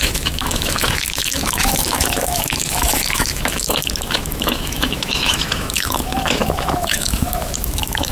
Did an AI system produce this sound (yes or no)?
yes